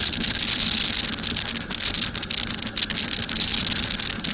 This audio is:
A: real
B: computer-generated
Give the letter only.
A